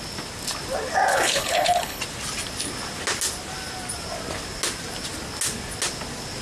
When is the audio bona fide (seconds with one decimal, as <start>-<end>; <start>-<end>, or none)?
0.0-1.1; 2.0-6.4